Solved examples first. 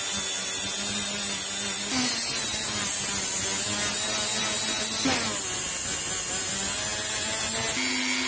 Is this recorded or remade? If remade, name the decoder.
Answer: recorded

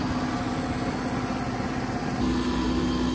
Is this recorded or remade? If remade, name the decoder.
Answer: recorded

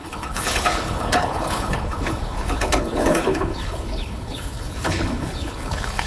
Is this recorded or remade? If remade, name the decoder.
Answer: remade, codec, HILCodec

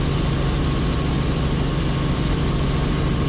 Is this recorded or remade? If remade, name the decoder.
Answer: recorded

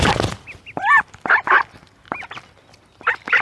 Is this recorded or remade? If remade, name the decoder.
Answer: recorded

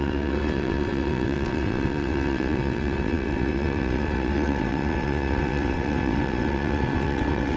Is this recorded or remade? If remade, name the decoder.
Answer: remade, vocoder, WaveNeXt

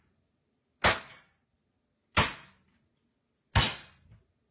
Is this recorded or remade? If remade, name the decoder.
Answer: recorded